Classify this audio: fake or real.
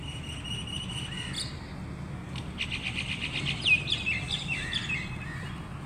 real